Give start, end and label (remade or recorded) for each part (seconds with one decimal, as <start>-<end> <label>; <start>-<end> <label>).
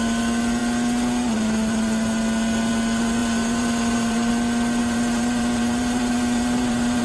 0.0-3.2 recorded; 3.2-4.3 remade; 4.3-4.8 recorded; 4.8-7.0 remade